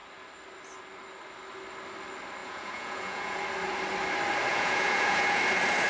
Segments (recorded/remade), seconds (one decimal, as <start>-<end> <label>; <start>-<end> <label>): 0.0-2.4 recorded; 2.4-3.4 remade; 3.4-4.5 recorded; 4.5-5.4 remade; 5.4-5.9 recorded